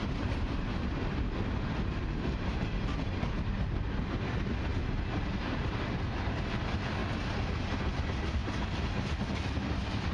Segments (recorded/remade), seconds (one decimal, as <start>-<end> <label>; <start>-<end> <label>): 0.0-0.9 remade; 0.9-10.1 recorded

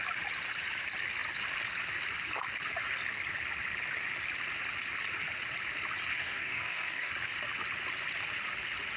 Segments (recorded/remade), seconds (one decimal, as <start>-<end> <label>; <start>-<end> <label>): 0.0-6.1 recorded; 6.1-7.1 remade; 7.1-9.0 recorded

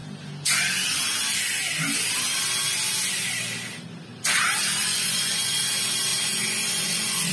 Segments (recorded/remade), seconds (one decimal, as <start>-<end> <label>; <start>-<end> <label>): 0.0-4.8 recorded; 4.8-5.6 remade; 5.6-6.1 recorded; 6.1-7.3 remade

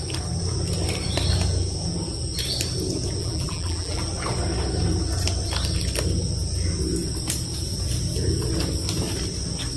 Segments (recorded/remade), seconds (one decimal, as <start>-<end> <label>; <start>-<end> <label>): 0.0-3.2 recorded; 3.2-4.0 remade; 4.0-9.8 recorded